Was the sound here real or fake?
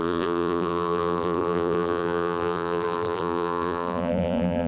fake